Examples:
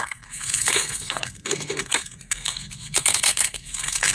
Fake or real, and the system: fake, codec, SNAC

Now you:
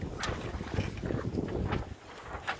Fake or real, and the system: real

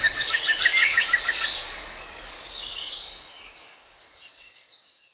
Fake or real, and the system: fake, codec, DAC